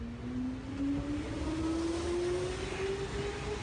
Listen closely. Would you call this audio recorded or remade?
recorded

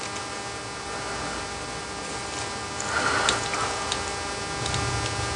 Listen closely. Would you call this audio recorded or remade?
recorded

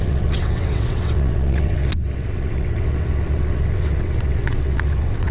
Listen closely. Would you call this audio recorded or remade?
remade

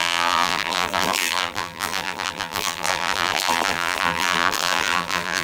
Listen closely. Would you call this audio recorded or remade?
remade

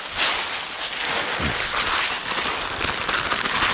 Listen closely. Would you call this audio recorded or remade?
recorded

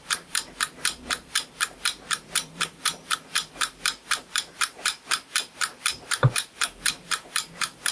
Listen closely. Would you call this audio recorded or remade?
remade